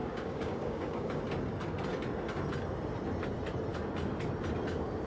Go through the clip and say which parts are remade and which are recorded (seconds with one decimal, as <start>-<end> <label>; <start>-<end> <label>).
0.0-1.2 remade; 1.2-5.1 recorded